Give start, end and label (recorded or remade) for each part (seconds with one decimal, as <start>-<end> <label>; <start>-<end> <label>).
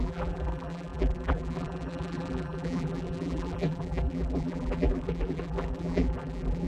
0.0-6.7 remade